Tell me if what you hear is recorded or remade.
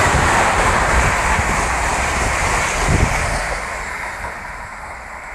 remade